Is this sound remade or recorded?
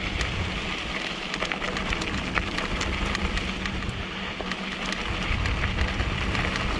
recorded